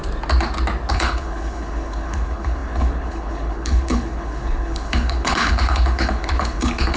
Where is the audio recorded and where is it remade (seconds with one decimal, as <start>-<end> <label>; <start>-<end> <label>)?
0.0-0.9 recorded; 0.9-7.0 remade